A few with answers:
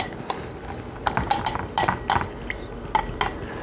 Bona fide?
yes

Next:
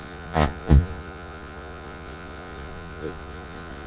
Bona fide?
no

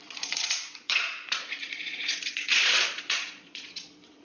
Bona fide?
no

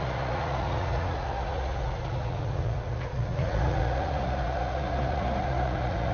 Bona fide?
no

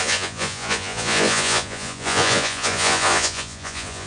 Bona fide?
no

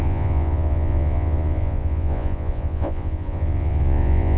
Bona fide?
no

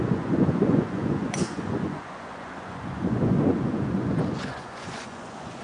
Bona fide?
no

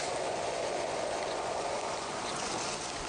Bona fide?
no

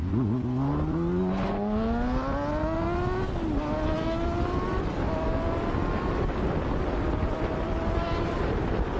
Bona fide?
yes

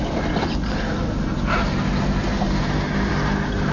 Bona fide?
yes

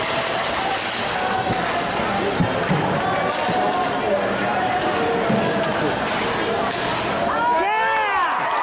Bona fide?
yes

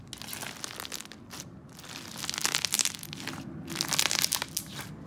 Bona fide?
yes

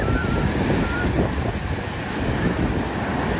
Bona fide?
yes